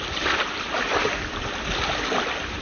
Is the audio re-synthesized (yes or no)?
yes